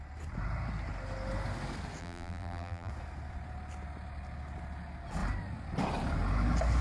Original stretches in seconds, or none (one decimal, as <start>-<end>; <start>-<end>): 0.0-2.0; 2.9-6.8